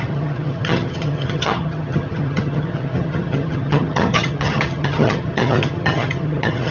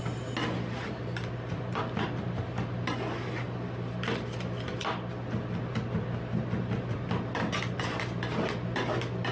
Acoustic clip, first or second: second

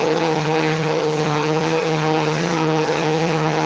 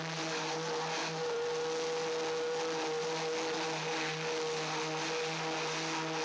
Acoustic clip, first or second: second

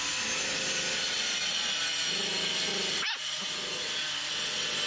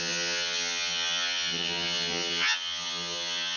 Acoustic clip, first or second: first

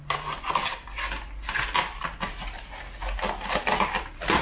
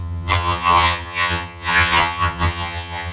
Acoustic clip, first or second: first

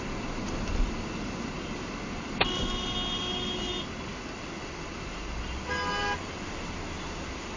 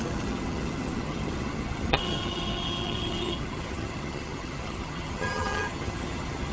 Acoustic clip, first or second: first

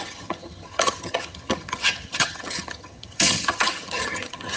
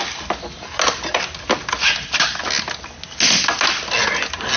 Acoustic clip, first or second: second